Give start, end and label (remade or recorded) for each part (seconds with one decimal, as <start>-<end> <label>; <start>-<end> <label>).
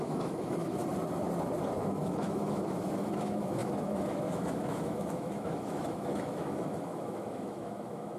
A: 0.0-0.8 remade; 0.8-1.8 recorded; 1.8-8.2 remade